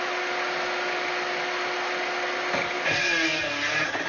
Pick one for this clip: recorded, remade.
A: recorded